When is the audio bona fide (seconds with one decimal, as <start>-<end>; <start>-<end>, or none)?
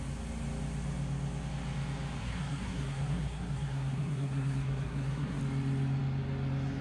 0.0-2.2; 5.4-6.8